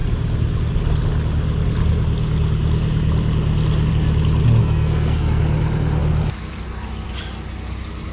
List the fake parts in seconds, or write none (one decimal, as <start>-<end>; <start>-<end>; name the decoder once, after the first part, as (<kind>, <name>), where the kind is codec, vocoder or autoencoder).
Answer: 4.6-5.4 (codec, SNAC)